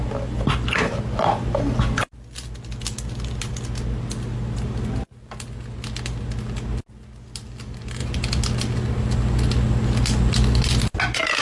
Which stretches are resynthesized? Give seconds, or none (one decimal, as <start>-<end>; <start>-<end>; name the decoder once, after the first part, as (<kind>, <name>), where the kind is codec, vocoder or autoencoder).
none